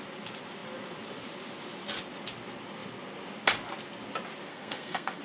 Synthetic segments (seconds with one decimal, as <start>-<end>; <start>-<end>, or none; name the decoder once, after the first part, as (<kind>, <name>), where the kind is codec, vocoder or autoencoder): 4.5-5.2 (codec, SNAC)